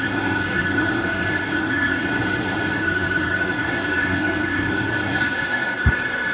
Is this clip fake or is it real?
fake